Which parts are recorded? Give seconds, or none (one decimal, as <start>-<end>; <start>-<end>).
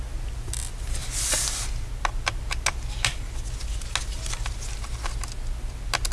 0.0-6.1